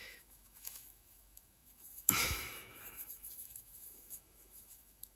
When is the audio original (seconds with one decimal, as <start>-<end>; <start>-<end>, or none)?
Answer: none